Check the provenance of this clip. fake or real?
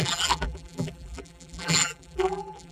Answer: fake